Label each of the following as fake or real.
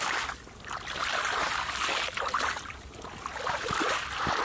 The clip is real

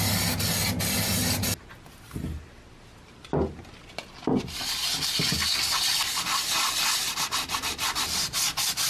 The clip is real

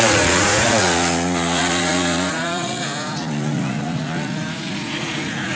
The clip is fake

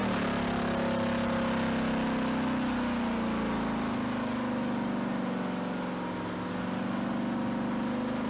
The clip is real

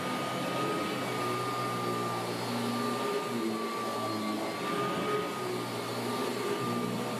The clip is real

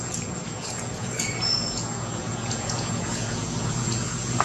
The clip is fake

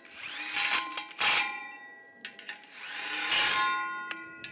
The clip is real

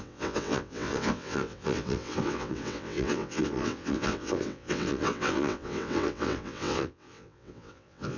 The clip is fake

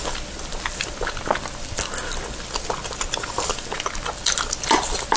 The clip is real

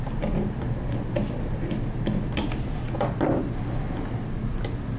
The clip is real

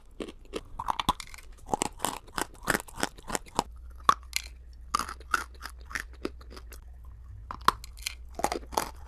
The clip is real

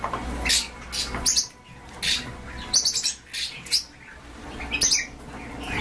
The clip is real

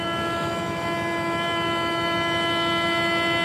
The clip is real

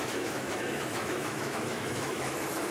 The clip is fake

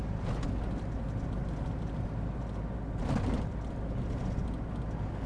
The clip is real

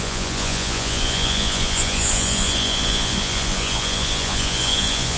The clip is fake